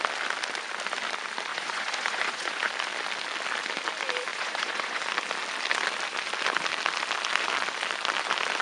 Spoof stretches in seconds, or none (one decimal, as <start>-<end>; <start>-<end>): 1.5-2.7; 4.3-5.0